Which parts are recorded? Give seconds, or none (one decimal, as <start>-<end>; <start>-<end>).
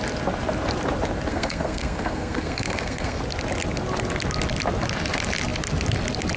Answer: 0.0-1.3; 3.2-6.4